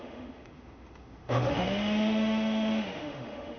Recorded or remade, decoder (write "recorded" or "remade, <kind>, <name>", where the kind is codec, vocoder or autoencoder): remade, autoencoder, DAC-VAE